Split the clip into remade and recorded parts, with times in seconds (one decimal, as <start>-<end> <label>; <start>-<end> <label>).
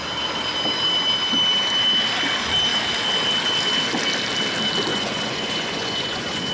0.0-4.9 recorded; 4.9-6.5 remade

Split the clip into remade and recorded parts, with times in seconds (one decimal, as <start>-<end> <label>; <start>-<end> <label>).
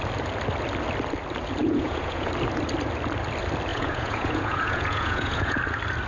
0.0-1.6 recorded; 1.6-2.3 remade; 2.3-3.7 recorded; 3.7-5.6 remade; 5.6-6.1 recorded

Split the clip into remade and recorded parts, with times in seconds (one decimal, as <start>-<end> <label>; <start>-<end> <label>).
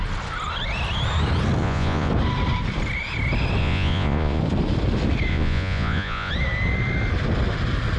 0.0-1.6 recorded; 1.6-2.1 remade; 2.1-3.6 recorded; 3.6-4.4 remade; 4.4-5.3 recorded; 5.3-6.3 remade; 6.3-8.0 recorded